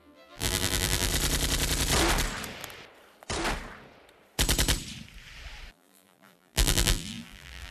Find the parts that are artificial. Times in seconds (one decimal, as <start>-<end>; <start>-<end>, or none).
0.0-1.1; 5.7-7.7